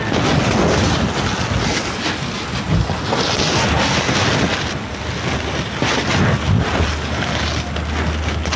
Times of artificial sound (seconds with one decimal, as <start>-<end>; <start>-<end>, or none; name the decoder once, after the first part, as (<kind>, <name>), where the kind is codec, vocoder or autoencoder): none